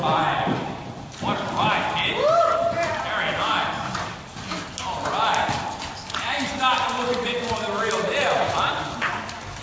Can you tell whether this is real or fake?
real